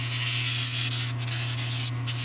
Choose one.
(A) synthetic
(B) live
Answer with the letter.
B